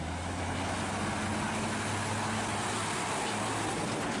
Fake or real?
real